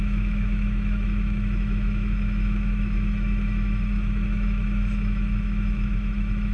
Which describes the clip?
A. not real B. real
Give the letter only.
A